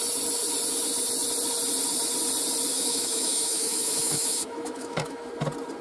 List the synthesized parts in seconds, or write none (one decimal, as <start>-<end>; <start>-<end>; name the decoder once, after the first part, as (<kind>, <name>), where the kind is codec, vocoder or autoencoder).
2.7-5.3 (autoencoder, DAC-VAE)